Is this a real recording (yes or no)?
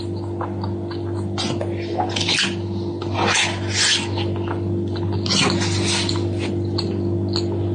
yes